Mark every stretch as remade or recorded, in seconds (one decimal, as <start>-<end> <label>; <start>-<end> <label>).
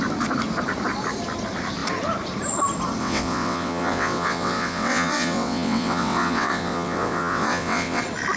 0.0-3.0 recorded; 3.0-8.0 remade; 8.0-8.4 recorded